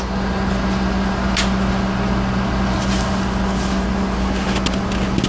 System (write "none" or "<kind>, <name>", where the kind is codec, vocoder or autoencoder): none